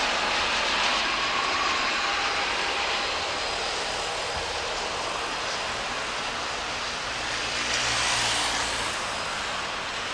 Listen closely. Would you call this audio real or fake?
real